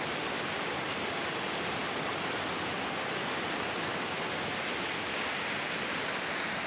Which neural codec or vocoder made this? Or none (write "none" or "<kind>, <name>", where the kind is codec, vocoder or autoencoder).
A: none